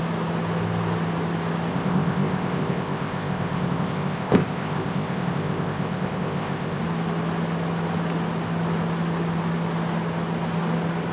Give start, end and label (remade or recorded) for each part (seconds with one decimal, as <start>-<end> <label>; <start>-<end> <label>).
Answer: 0.0-1.7 recorded; 1.7-6.8 remade; 6.8-11.1 recorded